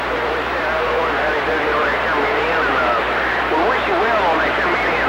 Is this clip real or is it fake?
fake